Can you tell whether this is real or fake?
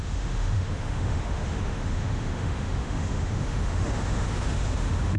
fake